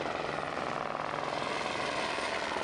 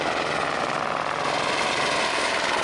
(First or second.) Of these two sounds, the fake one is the second